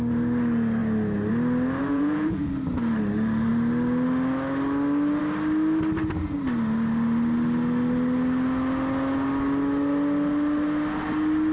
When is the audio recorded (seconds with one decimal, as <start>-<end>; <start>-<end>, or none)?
0.0-1.8; 2.5-11.5